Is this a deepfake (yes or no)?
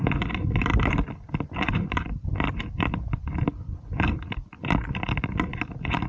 no